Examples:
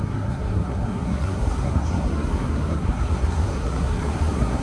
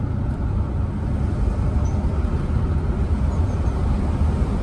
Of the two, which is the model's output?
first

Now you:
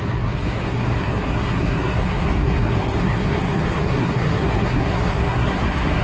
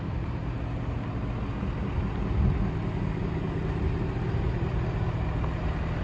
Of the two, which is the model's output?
first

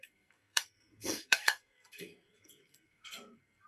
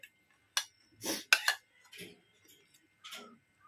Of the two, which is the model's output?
first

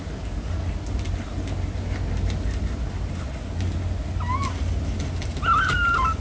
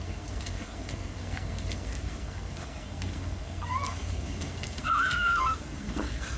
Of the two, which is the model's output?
second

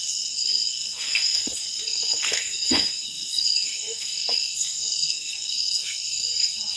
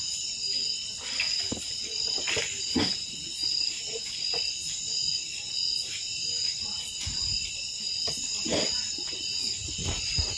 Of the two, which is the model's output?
first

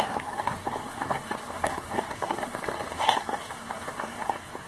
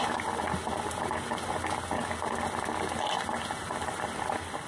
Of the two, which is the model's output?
first